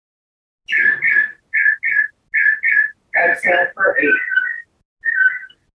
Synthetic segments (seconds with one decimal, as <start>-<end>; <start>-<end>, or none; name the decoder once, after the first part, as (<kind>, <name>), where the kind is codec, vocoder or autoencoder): none